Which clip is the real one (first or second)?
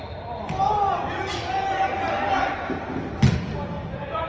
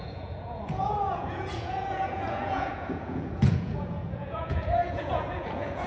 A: first